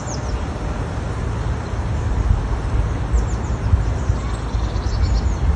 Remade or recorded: recorded